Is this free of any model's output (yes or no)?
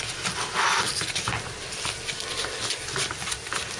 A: yes